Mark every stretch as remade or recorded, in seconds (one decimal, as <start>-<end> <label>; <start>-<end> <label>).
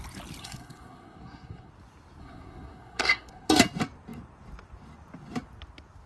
0.0-0.4 recorded; 0.4-1.7 remade; 1.7-2.2 recorded; 2.2-3.5 remade; 3.5-6.1 recorded